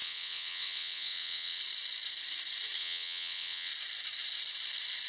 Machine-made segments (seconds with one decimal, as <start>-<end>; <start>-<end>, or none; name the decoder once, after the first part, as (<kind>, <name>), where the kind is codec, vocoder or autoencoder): 0.0-1.6 (vocoder, WaveNeXt); 2.8-3.7